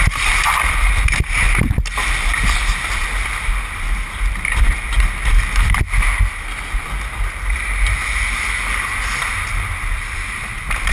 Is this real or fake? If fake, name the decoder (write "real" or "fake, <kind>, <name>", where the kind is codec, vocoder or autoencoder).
real